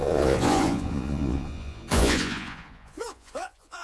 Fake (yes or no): yes